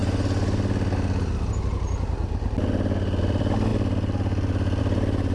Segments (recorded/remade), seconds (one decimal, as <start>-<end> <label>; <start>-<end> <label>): 0.0-3.2 recorded; 3.2-3.7 remade; 3.7-4.8 recorded; 4.8-5.3 remade